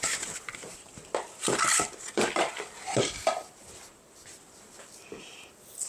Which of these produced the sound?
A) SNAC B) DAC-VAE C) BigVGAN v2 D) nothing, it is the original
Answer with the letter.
C